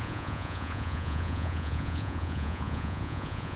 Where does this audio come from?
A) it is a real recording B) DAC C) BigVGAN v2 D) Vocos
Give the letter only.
D